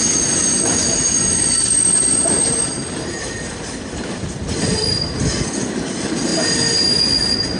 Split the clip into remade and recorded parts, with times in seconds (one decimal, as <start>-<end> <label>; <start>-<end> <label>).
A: 0.0-6.3 remade; 6.3-7.6 recorded